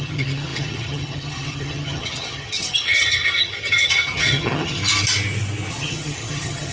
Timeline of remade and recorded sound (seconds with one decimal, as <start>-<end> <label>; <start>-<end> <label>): 0.0-4.8 remade; 4.8-5.7 recorded; 5.7-6.7 remade